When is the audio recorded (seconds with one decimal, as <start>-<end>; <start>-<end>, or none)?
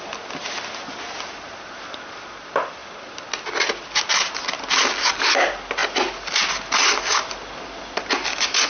0.0-8.7